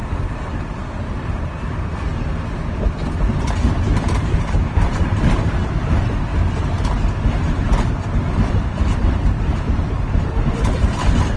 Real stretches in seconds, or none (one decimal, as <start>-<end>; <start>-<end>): 2.1-3.2